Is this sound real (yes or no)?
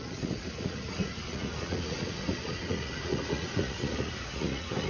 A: no